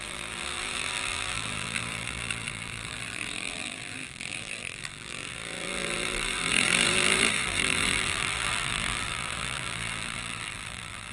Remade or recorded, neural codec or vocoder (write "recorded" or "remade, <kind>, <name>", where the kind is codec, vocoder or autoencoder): remade, vocoder, BigVGAN v2